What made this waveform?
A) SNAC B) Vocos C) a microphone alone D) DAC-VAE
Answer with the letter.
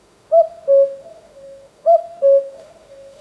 D